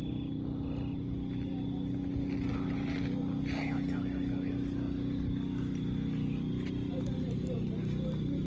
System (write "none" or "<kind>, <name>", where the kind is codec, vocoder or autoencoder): none